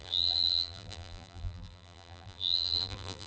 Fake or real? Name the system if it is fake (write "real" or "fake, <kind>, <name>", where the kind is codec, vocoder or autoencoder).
fake, vocoder, BigVGAN v2